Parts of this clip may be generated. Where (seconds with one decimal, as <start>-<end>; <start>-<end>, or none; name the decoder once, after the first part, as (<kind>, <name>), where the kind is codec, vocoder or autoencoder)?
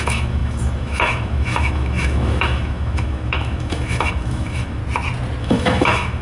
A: 0.0-4.8 (autoencoder, DAC-VAE); 5.4-6.2